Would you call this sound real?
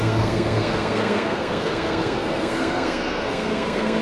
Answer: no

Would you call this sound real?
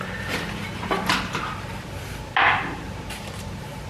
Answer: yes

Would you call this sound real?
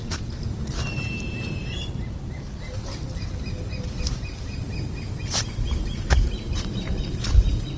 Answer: yes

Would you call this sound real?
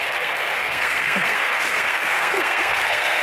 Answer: no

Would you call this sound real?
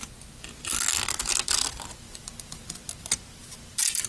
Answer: yes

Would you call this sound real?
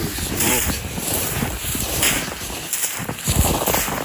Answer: yes